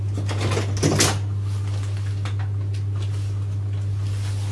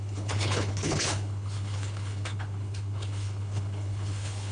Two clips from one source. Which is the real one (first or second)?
first